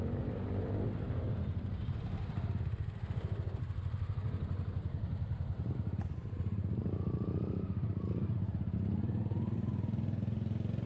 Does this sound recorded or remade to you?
remade